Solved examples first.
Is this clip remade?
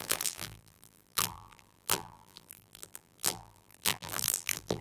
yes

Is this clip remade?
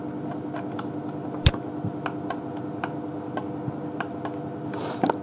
no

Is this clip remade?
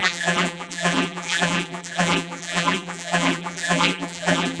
yes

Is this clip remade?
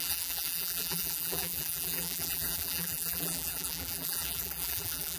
yes